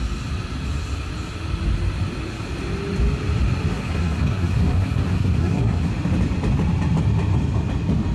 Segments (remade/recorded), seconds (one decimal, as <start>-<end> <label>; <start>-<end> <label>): 0.0-3.7 recorded; 3.7-5.9 remade; 5.9-8.1 recorded